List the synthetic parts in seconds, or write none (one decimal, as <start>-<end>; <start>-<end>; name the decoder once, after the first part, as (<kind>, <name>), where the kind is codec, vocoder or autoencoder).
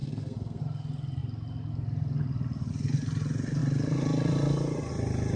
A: 0.0-0.6 (codec, SNAC)